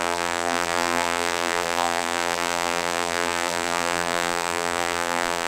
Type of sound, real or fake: fake